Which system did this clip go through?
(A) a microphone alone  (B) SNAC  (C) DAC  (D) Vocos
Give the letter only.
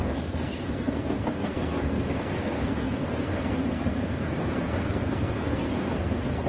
B